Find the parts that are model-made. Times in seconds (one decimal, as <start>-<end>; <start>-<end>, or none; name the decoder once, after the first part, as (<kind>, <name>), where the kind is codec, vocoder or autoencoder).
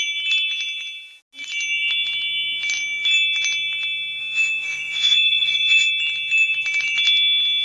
4.2-5.9 (vocoder, Vocos)